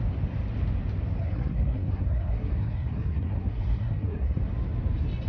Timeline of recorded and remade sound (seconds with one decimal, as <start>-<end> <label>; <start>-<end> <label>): 0.0-1.2 recorded; 1.2-4.4 remade; 4.4-5.3 recorded